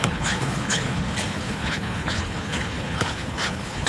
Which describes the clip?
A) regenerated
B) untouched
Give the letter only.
A